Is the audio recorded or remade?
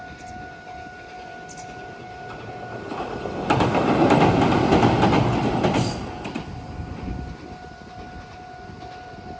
recorded